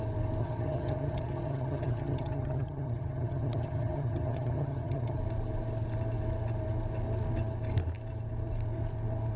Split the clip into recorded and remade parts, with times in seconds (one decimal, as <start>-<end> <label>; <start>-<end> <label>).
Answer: 0.0-0.4 recorded; 0.4-5.2 remade; 5.2-9.4 recorded